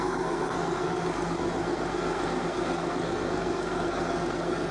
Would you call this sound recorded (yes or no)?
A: no